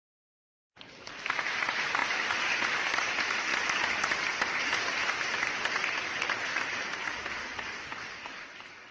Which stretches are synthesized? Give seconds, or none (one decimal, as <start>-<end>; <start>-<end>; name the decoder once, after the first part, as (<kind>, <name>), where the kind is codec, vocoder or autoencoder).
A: none